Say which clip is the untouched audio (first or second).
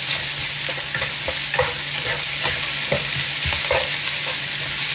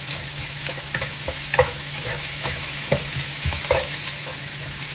first